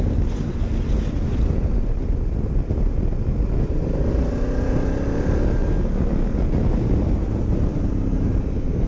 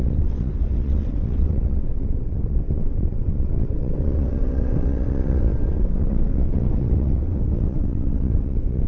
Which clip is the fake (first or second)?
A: second